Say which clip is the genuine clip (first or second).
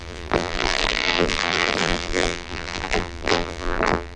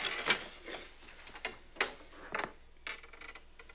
second